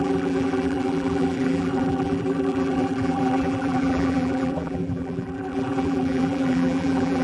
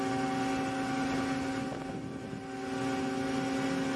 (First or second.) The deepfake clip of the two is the first